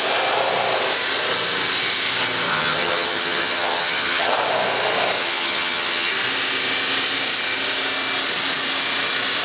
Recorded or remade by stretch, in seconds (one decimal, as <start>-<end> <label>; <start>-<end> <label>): 0.0-2.5 recorded; 2.5-4.3 remade; 4.3-5.2 recorded; 5.2-6.1 remade; 6.1-9.4 recorded